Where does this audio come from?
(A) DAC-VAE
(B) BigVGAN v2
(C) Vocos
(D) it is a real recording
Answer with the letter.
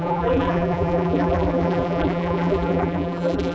B